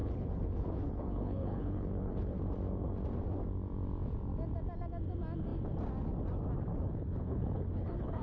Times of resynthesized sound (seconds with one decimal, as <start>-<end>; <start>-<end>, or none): 0.0-2.4; 6.7-8.2